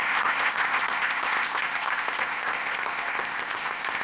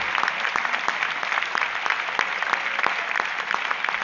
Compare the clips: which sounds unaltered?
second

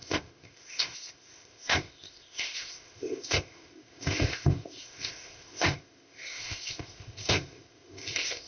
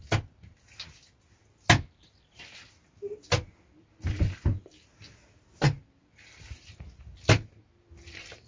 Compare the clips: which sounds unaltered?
second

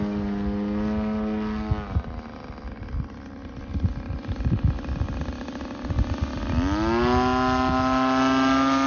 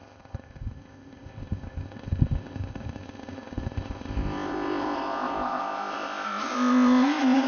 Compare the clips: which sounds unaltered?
first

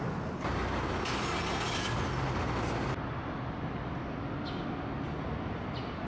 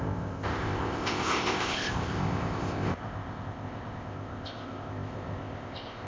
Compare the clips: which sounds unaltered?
first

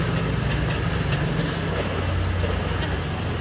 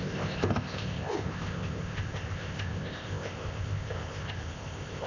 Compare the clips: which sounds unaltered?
first